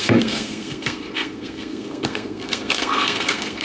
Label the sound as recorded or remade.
remade